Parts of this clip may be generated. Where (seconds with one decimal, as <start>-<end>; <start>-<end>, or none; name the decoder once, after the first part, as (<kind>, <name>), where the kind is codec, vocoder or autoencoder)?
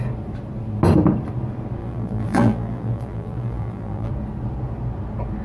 1.8-4.1 (vocoder, BigVGAN v2)